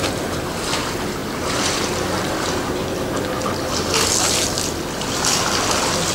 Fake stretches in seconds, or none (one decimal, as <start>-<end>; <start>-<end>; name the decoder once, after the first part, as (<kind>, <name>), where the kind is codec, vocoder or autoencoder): none